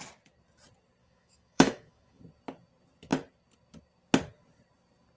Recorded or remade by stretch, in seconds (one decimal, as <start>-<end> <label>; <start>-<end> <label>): 0.0-1.0 recorded; 1.0-2.2 remade; 2.2-5.2 recorded